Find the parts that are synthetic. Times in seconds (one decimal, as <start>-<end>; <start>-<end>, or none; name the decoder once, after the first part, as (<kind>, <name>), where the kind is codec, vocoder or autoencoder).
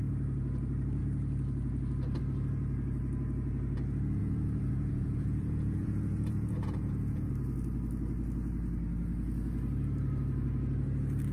4.2-7.3 (vocoder, Vocos)